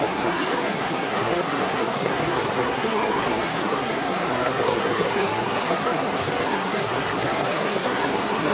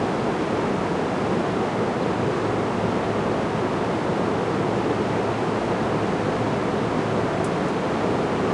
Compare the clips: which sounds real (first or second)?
second